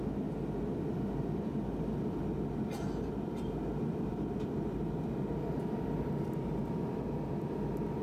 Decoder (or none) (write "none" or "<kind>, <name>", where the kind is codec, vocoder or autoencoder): none